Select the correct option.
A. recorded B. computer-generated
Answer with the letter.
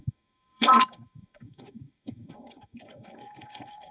B